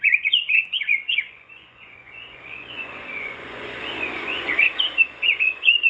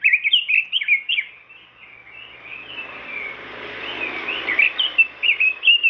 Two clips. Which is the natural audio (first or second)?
second